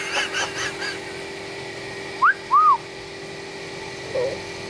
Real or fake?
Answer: real